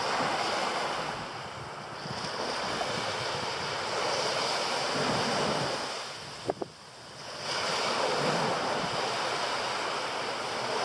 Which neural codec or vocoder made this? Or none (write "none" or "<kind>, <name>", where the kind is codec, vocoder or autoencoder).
none